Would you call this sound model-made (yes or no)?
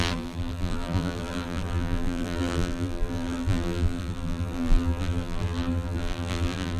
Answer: yes